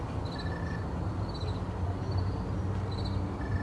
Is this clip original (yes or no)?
yes